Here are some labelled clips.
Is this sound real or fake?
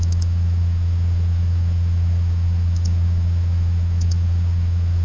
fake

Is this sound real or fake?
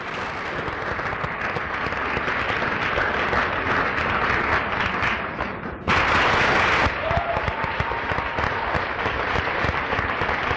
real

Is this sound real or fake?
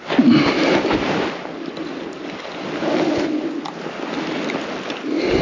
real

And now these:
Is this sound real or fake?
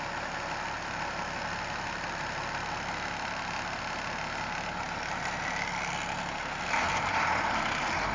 real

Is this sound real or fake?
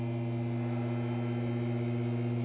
real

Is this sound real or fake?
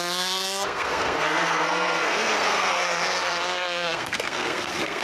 fake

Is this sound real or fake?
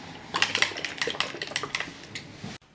real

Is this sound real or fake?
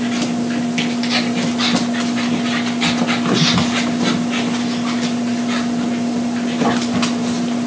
real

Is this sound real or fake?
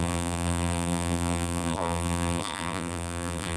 fake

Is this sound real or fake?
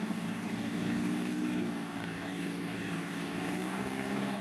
fake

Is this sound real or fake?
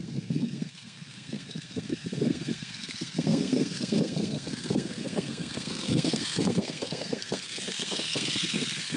fake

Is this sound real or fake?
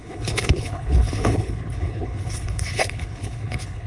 fake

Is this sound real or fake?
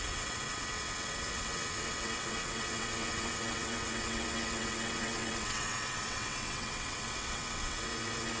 fake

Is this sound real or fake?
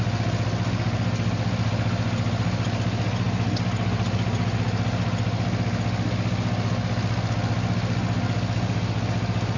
real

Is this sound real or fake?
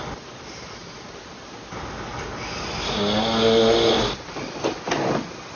real